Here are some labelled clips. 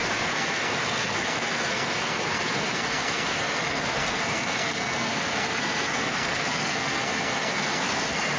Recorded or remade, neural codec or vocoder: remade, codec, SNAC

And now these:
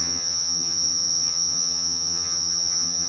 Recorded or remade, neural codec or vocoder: remade, vocoder, HiFi-GAN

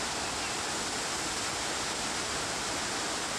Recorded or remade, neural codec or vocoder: recorded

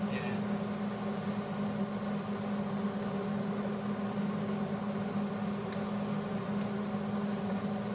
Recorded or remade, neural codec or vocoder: recorded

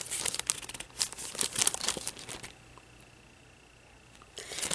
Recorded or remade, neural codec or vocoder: recorded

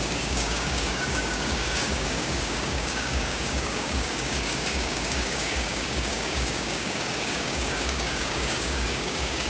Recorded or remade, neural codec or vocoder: remade, codec, DAC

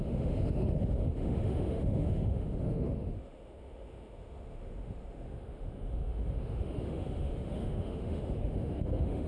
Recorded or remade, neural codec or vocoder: remade, autoencoder, DAC-VAE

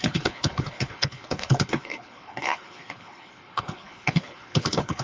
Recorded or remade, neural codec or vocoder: remade, codec, HILCodec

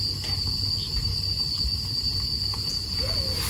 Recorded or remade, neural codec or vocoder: recorded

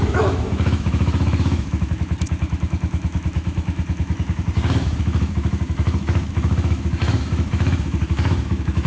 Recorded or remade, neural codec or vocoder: remade, autoencoder, DAC-VAE